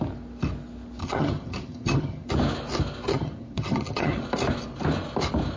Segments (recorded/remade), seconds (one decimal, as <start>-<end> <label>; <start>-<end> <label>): 0.0-1.0 recorded; 1.0-2.3 remade; 2.3-3.1 recorded; 3.1-4.2 remade; 4.2-5.6 recorded